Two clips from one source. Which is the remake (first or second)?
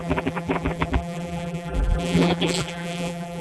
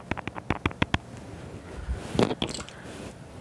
first